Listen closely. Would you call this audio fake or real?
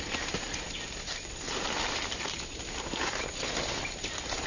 real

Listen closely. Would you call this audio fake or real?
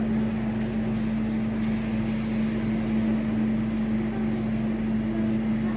real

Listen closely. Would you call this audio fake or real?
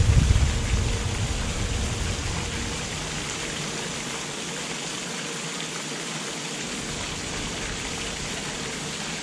real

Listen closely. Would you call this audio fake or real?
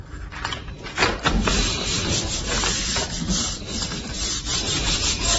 real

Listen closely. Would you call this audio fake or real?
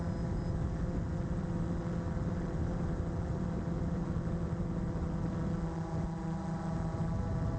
real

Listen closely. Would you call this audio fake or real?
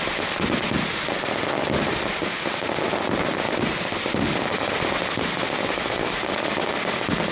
real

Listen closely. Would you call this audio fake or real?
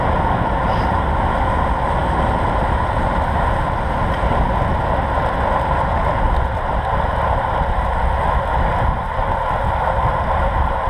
real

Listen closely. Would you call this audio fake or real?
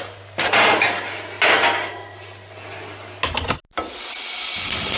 real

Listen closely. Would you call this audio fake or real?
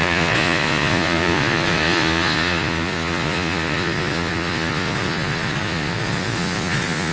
fake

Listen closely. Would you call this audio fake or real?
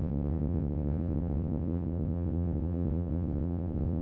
fake